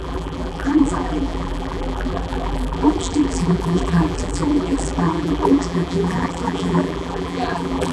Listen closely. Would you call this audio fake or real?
fake